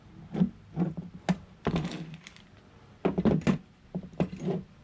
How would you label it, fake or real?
real